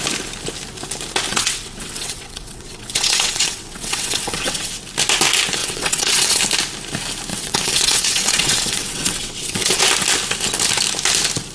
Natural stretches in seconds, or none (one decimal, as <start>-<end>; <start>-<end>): 0.0-1.3; 4.7-5.6; 6.4-7.3; 9.8-11.5